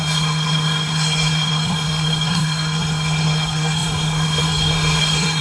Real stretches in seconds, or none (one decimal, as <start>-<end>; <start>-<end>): none